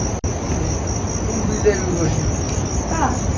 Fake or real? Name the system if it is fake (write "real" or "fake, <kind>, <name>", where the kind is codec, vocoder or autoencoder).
real